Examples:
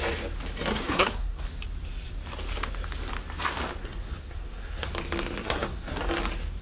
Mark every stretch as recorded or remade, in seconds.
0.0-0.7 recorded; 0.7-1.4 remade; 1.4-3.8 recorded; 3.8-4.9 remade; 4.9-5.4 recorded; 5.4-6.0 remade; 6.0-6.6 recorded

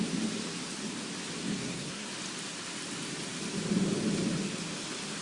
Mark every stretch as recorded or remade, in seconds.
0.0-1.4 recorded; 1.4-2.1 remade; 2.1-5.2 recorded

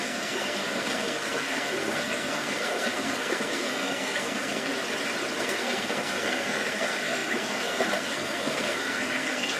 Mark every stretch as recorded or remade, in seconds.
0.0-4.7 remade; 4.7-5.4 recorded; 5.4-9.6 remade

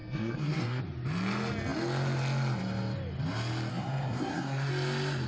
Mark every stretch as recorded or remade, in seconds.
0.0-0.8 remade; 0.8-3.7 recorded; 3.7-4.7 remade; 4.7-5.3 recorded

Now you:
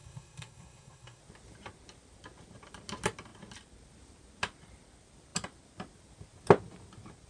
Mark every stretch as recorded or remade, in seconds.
0.0-1.2 remade; 1.2-7.3 recorded